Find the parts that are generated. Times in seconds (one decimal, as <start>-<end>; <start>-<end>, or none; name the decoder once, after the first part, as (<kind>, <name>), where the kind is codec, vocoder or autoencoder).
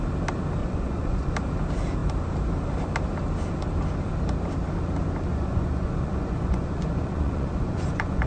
0.6-1.3 (vocoder, Vocos); 5.3-8.3